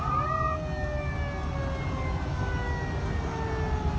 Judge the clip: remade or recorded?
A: recorded